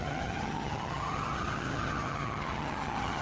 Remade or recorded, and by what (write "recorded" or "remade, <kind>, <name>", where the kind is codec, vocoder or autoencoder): remade, vocoder, HiFi-GAN